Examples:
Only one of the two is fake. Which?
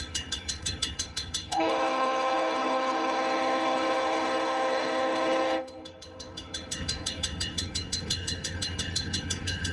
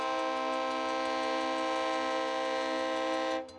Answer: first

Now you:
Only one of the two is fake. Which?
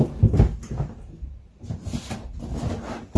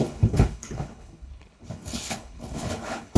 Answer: second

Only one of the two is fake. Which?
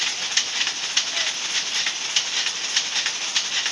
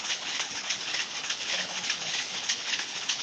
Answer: second